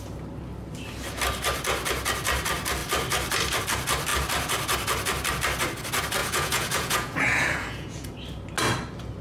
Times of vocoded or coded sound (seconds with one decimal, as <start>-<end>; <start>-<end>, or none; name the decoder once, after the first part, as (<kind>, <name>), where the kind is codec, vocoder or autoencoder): 6.2-8.1 (vocoder, Vocos)